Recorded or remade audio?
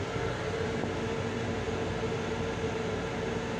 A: recorded